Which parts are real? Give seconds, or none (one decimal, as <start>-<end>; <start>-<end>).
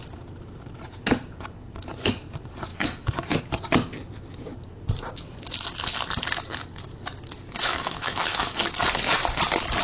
0.0-2.7; 3.4-7.6; 8.6-9.8